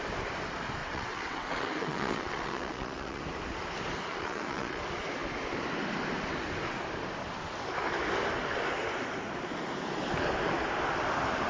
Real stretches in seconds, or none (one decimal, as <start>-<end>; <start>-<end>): 0.0-0.8; 3.2-4.1; 4.8-11.5